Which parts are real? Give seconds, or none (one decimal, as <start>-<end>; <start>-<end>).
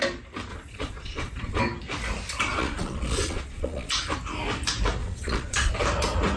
0.0-0.5; 1.6-2.5; 3.9-5.0; 5.7-6.4